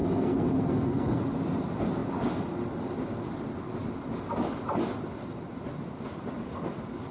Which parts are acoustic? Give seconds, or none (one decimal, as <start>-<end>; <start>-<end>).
1.2-7.1